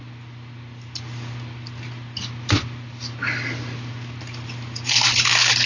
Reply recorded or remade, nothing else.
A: recorded